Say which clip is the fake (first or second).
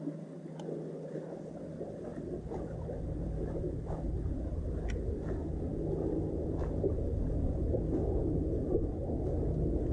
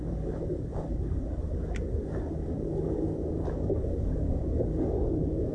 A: second